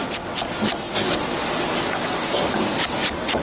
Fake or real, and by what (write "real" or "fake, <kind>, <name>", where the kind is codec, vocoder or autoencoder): real